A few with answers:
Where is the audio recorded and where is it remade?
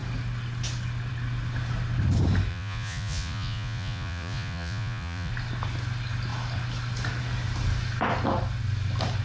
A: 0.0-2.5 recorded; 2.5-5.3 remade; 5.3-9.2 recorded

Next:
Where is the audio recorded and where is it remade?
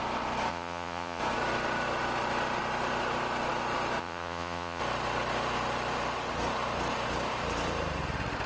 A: 0.0-0.5 recorded; 0.5-1.2 remade; 1.2-4.0 recorded; 4.0-4.8 remade; 4.8-8.5 recorded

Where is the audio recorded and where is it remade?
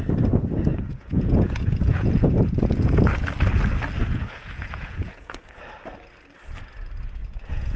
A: 0.0-0.7 recorded; 0.7-2.4 remade; 2.4-4.0 recorded; 4.0-5.4 remade; 5.4-7.2 recorded; 7.2-7.8 remade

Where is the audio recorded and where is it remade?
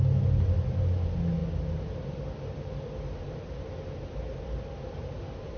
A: 0.0-5.6 recorded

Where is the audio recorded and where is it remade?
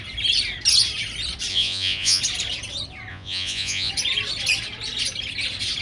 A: 0.0-1.5 recorded; 1.5-2.2 remade; 2.2-3.1 recorded; 3.1-3.9 remade; 3.9-5.8 recorded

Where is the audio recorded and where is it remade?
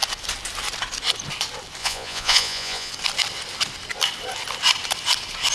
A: 0.0-1.8 recorded; 1.8-2.9 remade; 2.9-5.5 recorded